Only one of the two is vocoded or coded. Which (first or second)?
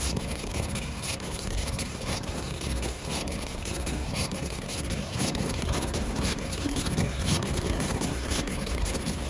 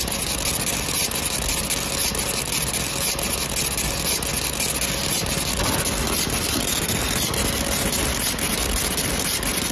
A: first